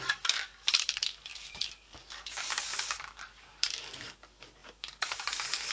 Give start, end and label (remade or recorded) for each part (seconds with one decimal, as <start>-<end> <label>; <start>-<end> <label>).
0.0-5.7 remade

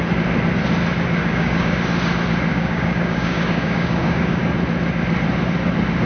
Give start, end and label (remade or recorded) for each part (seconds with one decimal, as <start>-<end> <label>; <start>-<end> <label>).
0.0-1.2 recorded; 1.2-1.8 remade; 1.8-2.5 recorded; 2.5-4.4 remade; 4.4-6.1 recorded

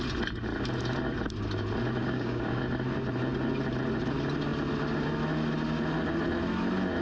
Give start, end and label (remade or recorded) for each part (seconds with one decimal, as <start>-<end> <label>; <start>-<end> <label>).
0.0-2.0 recorded; 2.0-2.6 remade; 2.6-7.0 recorded

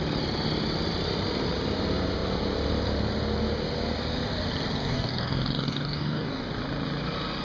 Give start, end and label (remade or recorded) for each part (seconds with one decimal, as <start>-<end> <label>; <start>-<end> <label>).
0.0-4.8 recorded; 4.8-6.5 remade; 6.5-7.4 recorded

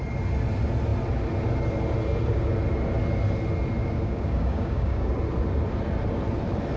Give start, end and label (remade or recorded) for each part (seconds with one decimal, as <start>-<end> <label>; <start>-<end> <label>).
0.0-3.8 recorded; 3.8-5.1 remade; 5.1-6.8 recorded

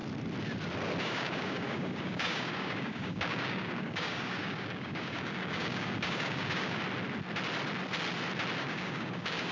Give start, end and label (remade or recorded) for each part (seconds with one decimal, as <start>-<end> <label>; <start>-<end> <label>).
0.0-1.0 recorded; 1.0-6.8 remade; 6.8-8.6 recorded; 8.6-9.5 remade

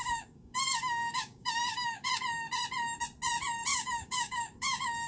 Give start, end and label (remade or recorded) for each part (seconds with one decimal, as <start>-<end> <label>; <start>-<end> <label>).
0.0-2.1 remade; 2.1-3.7 recorded; 3.7-5.1 remade